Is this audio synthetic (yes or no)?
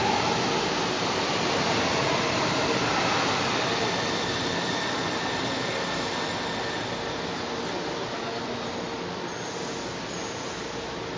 no